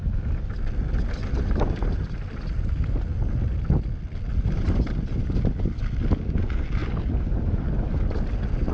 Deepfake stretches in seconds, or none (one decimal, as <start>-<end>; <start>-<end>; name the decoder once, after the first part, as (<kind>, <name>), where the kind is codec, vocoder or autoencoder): none